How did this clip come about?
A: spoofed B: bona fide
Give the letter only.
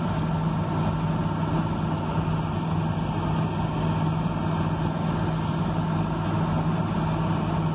B